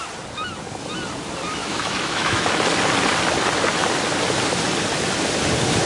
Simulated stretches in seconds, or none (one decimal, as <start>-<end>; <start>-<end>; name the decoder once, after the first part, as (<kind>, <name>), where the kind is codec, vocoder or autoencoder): 1.6-2.5 (autoencoder, DAC-VAE)